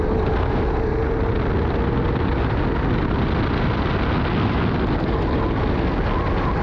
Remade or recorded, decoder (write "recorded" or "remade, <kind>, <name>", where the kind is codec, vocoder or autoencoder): recorded